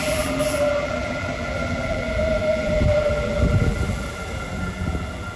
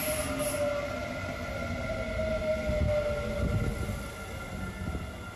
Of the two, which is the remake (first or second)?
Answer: first